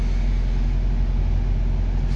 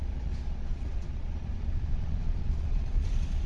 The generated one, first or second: second